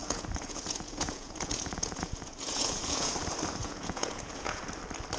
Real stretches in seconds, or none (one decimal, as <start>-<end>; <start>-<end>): 3.1-3.6; 4.6-5.2